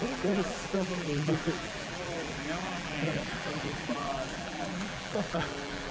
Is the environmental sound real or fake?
fake